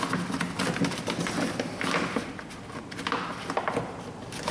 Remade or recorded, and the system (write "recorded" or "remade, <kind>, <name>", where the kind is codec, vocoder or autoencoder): recorded